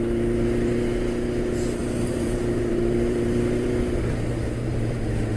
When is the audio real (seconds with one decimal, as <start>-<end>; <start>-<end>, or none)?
0.0-1.8; 5.0-5.4